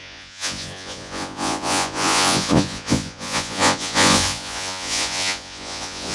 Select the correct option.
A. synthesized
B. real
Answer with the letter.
A